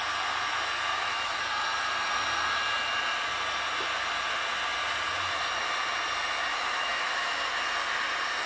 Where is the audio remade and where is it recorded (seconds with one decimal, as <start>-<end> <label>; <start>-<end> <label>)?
0.0-0.9 recorded; 0.9-1.4 remade; 1.4-6.5 recorded; 6.5-7.5 remade; 7.5-8.5 recorded

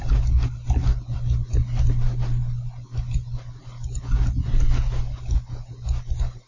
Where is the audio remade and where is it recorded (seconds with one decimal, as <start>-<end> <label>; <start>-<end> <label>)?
0.0-6.5 recorded

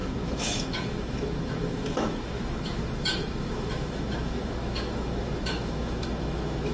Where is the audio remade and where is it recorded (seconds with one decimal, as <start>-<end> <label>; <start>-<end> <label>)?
0.0-6.7 remade

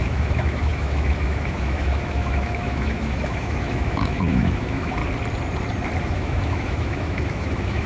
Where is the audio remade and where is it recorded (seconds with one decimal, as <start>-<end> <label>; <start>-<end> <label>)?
0.0-5.0 remade; 5.0-6.0 recorded; 6.0-7.9 remade

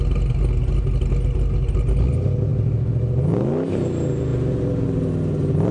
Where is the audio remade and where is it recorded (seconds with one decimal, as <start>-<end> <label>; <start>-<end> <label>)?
0.0-5.7 recorded